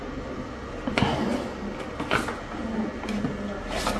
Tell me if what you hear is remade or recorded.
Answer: recorded